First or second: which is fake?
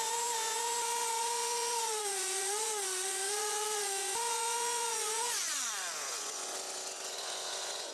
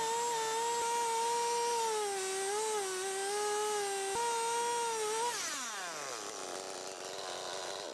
first